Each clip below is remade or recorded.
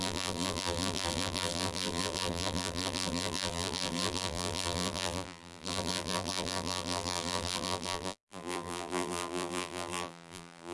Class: remade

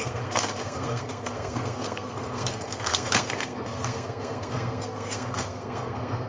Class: remade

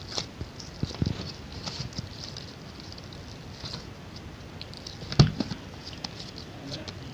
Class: recorded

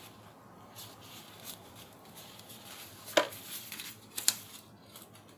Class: recorded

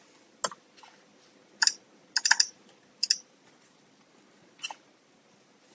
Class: recorded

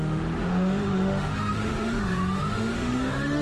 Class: remade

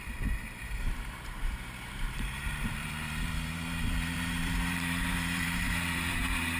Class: remade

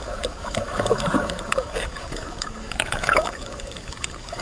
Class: remade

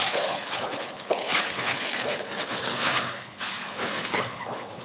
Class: remade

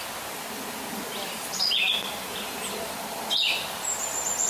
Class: recorded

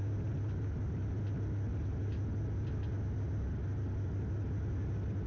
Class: recorded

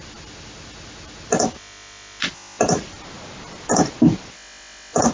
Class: recorded